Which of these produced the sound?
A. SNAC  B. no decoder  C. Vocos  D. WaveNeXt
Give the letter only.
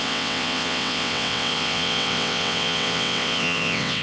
D